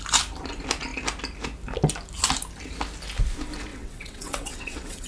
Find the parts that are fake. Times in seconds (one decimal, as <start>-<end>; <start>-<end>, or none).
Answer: 3.7-5.1